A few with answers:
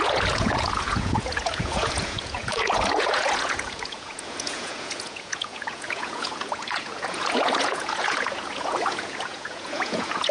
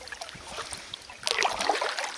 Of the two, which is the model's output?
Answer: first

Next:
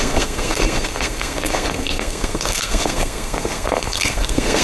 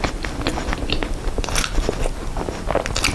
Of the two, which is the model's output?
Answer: first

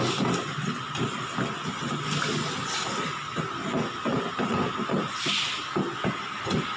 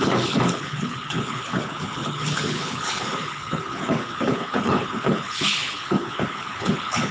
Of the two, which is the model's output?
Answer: second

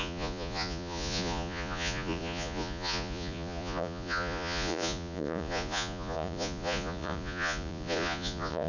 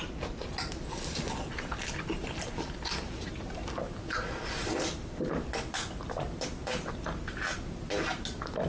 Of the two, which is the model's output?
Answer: first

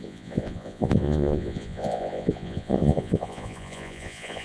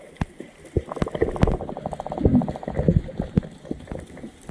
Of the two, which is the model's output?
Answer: first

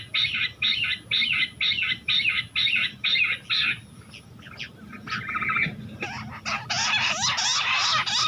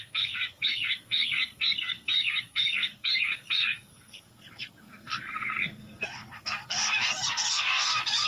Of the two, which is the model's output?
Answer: second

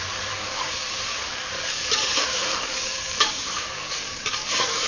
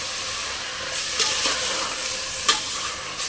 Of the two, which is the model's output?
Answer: first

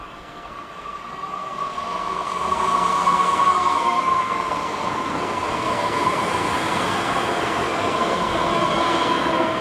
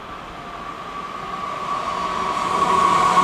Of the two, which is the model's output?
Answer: first